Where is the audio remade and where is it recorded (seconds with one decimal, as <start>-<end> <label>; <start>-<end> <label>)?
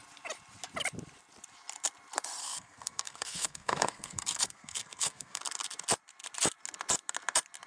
0.0-2.4 recorded; 2.4-5.4 remade; 5.4-7.7 recorded